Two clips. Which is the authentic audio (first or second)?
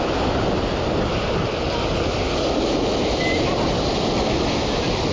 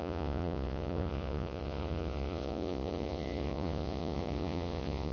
first